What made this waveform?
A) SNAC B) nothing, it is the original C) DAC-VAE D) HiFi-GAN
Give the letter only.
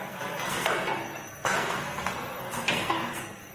A